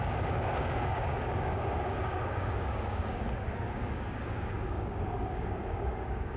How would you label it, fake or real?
fake